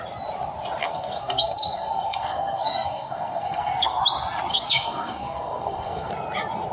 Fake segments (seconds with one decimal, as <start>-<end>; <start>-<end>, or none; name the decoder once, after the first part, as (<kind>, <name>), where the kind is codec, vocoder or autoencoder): 0.8-4.0 (codec, SNAC); 4.5-6.1